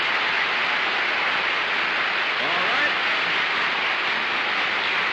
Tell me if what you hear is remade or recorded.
recorded